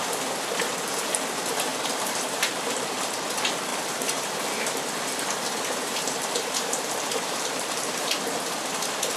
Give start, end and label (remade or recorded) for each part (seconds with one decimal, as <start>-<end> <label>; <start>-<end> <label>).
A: 0.0-1.7 recorded; 1.7-3.1 remade; 3.1-3.7 recorded; 3.7-8.1 remade; 8.1-9.2 recorded